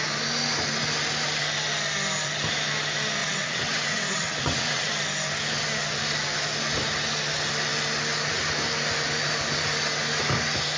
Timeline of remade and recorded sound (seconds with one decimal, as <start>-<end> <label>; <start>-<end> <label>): 0.0-3.2 recorded; 3.2-4.9 remade; 4.9-10.8 recorded